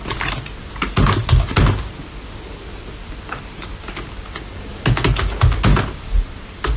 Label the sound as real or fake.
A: real